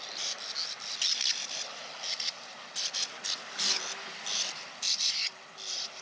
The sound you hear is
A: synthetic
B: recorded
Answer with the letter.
B